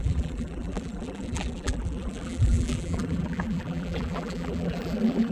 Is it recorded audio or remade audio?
remade